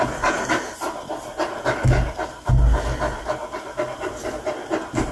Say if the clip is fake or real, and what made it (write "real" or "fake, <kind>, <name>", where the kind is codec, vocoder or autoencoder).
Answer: real